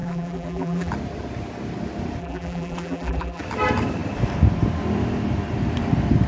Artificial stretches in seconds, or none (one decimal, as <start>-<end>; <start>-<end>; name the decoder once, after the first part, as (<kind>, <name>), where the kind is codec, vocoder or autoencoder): 0.0-0.9 (vocoder, BigVGAN v2); 2.2-3.4